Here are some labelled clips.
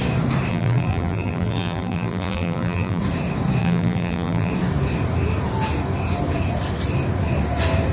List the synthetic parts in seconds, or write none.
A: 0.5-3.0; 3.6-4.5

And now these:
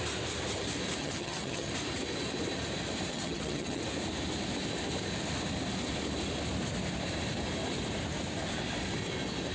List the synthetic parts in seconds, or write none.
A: 1.0-1.7; 3.1-3.8

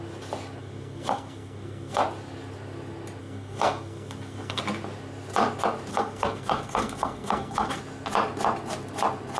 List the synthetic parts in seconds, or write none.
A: 0.6-2.0; 3.2-4.6; 5.9-7.8

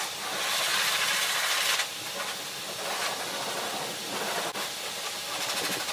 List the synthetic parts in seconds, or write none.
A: none